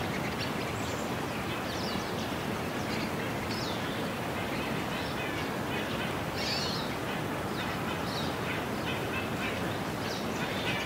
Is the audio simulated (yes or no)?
no